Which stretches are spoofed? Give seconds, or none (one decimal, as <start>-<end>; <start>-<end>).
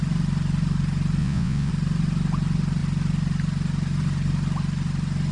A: 1.2-1.7